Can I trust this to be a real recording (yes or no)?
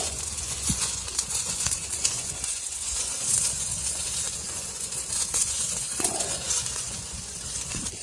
no